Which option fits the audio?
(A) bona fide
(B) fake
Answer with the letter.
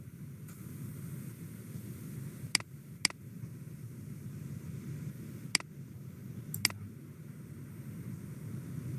A